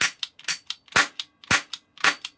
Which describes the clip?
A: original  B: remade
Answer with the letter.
A